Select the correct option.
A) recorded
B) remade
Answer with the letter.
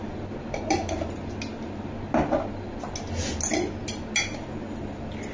A